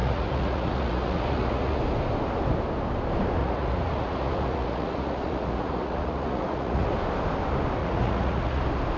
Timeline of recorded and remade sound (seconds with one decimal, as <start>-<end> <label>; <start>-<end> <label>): 0.0-1.8 remade; 1.8-3.4 recorded; 3.4-6.9 remade; 6.9-7.8 recorded; 7.8-8.6 remade; 8.6-9.0 recorded